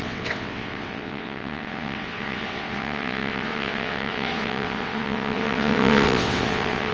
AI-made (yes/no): yes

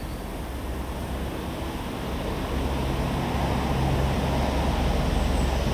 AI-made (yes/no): no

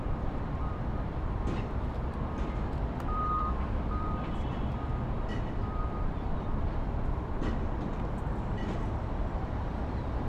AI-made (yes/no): yes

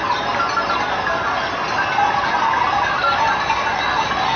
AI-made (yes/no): no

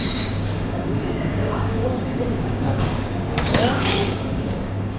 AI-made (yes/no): yes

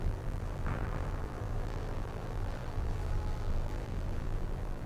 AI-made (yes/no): yes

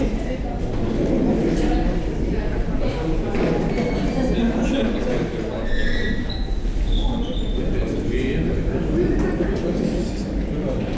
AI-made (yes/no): no